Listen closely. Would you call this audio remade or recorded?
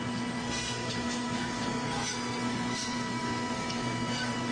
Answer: remade